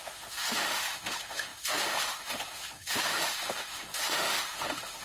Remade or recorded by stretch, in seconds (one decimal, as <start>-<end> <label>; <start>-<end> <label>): 0.0-5.0 remade